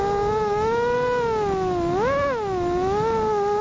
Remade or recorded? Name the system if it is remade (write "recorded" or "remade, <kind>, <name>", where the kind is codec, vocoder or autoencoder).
recorded